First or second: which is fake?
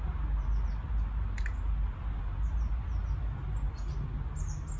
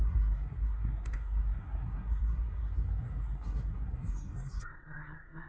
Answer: second